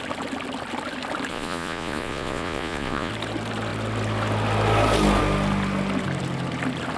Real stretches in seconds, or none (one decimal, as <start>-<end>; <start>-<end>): 0.0-1.3; 3.1-7.0